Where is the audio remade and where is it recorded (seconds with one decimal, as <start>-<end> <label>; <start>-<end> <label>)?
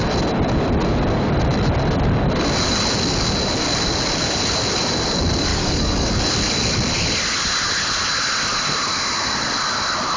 0.0-5.5 recorded; 5.5-6.1 remade; 6.1-10.2 recorded